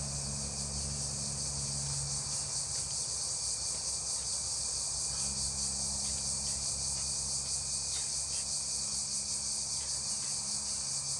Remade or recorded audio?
recorded